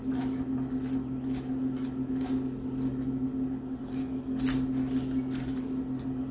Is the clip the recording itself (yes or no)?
yes